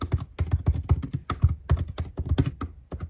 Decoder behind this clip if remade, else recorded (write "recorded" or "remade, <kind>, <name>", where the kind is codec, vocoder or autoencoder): recorded